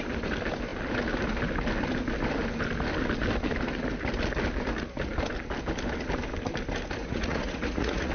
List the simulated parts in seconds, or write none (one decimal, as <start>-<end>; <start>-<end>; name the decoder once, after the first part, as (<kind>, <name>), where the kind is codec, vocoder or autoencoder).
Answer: 7.0-8.1 (vocoder, Vocos)